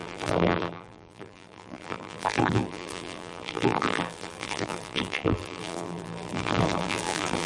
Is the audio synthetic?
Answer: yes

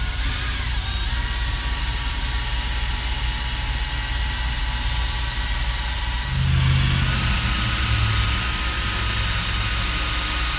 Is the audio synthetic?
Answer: no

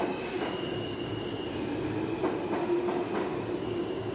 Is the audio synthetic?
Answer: no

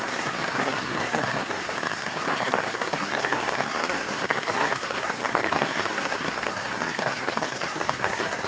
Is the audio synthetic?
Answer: yes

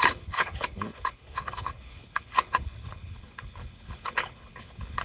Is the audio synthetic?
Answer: yes